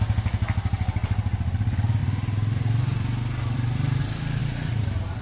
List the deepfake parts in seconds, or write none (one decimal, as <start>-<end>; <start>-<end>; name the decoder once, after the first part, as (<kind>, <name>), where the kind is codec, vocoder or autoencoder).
2.0-4.0 (vocoder, BigVGAN v2)